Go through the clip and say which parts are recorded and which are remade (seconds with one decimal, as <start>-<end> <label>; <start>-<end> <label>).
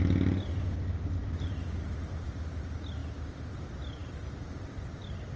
0.0-1.2 recorded; 1.2-2.3 remade; 2.3-5.4 recorded